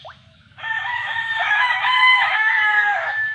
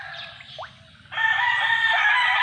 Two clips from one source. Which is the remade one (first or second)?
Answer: first